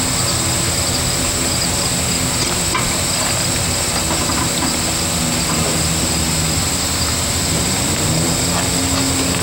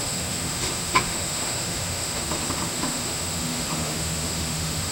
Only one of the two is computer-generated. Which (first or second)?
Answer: second